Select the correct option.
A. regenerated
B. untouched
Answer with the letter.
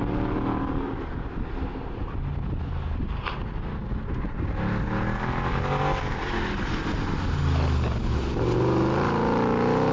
B